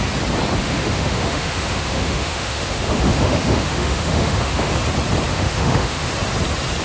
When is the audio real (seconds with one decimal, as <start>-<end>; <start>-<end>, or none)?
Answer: 0.0-0.6; 4.7-5.3; 6.1-6.8